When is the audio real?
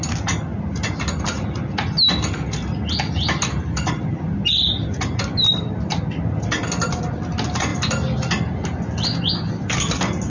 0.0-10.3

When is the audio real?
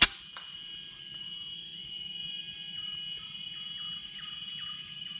0.0-5.2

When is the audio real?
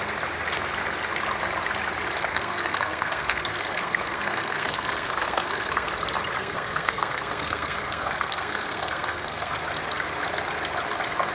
0.0-2.3; 5.9-6.4; 9.5-11.3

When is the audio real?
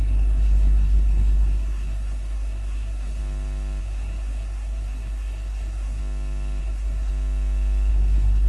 3.2-3.8; 6.0-6.6; 7.1-7.9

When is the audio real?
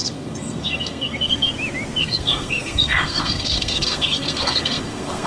1.5-2.0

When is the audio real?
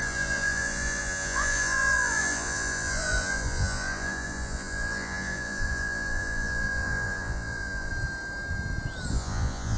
7.9-9.1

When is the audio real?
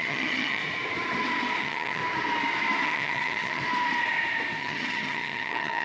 0.6-1.6; 2.0-2.8; 3.6-4.6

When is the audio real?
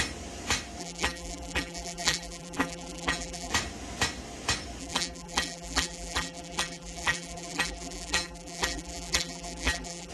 0.0-0.8; 3.5-4.8